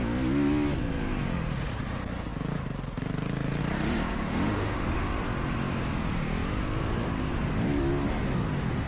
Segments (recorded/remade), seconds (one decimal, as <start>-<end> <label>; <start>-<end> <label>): 0.0-4.1 recorded; 4.1-5.1 remade; 5.1-8.9 recorded